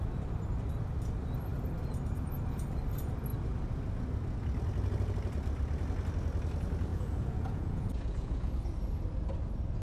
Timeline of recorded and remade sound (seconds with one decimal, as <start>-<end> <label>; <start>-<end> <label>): 0.0-6.9 recorded; 6.9-8.5 remade; 8.5-9.8 recorded